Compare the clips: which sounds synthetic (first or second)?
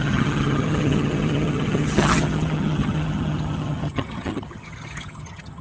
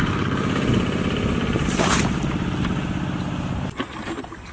first